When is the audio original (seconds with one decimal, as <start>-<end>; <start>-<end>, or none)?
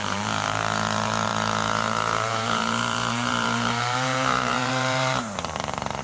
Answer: none